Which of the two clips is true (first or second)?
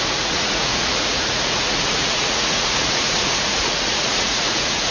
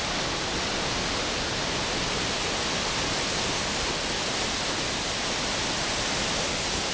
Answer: second